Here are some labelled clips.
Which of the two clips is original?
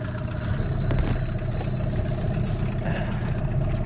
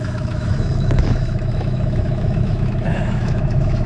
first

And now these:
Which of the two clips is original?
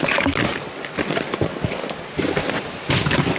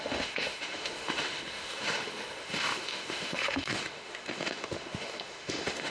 first